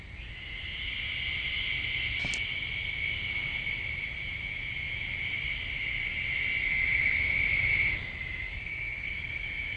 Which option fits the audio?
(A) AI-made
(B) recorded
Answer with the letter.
B